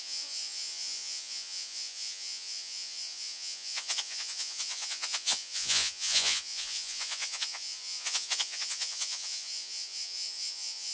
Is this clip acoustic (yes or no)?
no